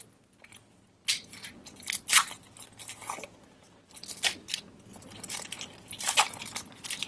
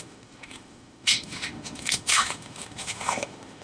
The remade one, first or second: second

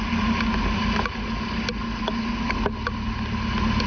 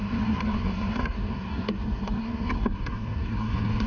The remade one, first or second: second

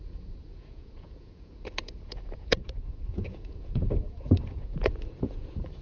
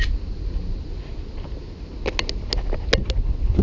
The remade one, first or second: first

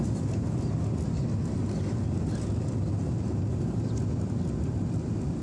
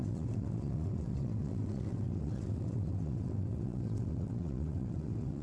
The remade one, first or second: second